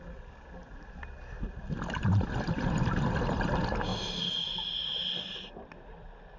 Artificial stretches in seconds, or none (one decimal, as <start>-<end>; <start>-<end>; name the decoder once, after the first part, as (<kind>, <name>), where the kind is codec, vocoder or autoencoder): none